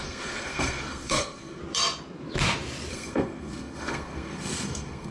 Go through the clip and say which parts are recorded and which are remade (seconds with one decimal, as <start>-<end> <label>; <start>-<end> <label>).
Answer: 0.0-1.6 remade; 1.6-2.9 recorded; 2.9-5.1 remade